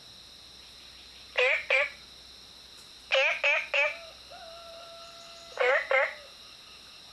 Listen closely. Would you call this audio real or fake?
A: real